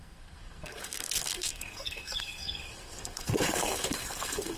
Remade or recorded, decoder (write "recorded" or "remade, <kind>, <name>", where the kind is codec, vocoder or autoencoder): remade, codec, SNAC